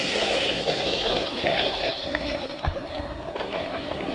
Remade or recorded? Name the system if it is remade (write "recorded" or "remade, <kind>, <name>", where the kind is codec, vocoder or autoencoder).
remade, codec, SNAC